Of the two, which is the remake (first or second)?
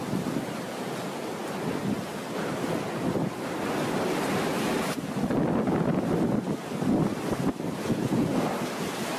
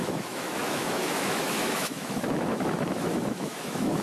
second